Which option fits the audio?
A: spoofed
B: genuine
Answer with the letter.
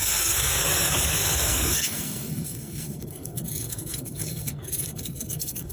A